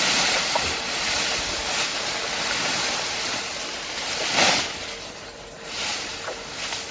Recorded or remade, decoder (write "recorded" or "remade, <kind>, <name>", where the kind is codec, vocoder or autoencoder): recorded